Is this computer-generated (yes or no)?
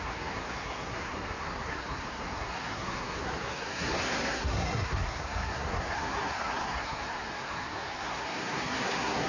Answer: yes